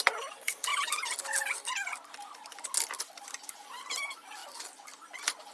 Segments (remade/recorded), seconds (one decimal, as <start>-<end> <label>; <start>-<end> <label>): 0.0-5.5 recorded